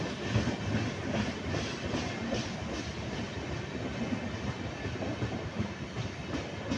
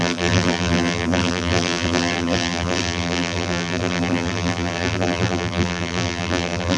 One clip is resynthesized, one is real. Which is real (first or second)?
first